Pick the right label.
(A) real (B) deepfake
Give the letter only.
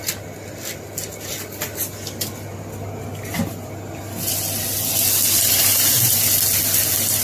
A